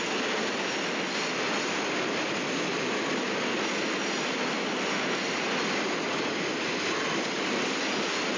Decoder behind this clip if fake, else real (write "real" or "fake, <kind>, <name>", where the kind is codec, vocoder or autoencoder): real